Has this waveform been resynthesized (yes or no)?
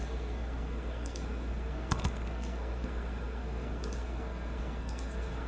yes